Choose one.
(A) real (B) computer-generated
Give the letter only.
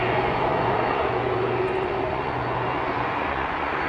B